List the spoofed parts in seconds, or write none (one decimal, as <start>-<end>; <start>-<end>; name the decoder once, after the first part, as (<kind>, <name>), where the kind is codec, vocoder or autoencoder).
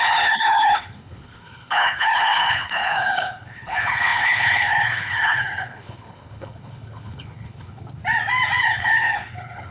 0.0-8.0 (codec, HILCodec); 8.6-9.7